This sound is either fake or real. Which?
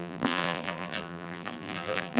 fake